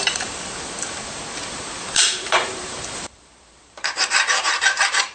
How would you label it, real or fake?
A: fake